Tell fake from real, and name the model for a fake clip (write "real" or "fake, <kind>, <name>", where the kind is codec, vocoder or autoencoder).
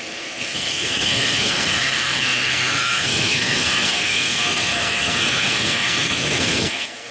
fake, codec, SNAC